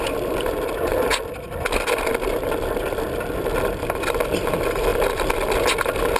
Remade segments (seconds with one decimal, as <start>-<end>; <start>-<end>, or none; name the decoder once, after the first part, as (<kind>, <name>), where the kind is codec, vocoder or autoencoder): 0.9-4.4 (vocoder, BigVGAN v2)